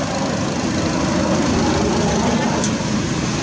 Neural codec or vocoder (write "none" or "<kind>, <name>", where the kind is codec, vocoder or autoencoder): none